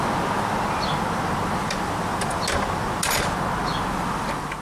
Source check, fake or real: real